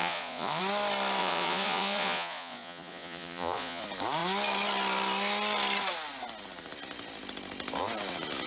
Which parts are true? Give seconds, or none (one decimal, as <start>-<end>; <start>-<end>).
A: 0.6-1.2; 3.8-8.5